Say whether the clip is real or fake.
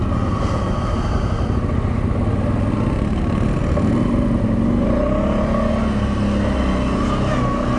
real